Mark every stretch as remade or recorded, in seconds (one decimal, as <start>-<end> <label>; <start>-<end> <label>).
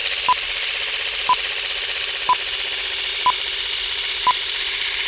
0.0-5.1 recorded